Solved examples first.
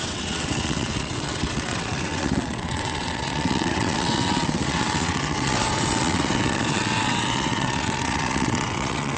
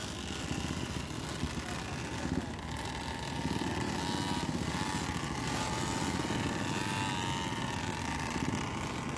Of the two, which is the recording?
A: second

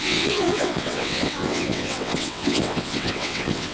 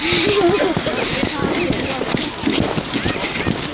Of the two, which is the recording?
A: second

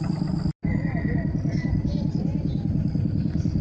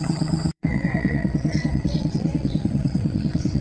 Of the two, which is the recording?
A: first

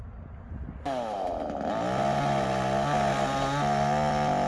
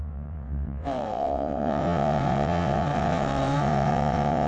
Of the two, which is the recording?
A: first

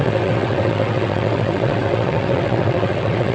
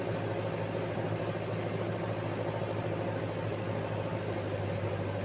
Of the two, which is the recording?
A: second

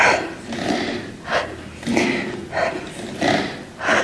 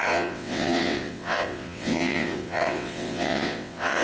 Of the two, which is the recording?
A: first